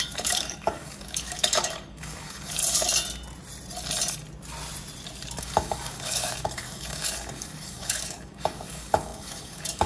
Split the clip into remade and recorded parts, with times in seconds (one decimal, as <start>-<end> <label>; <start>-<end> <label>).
0.0-2.6 remade; 2.6-5.4 recorded; 5.4-9.9 remade